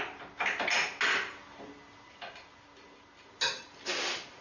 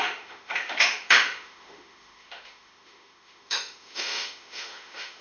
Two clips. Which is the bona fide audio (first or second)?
first